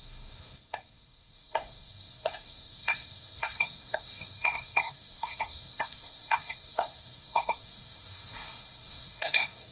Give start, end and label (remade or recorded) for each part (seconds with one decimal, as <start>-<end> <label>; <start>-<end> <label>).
0.0-9.7 remade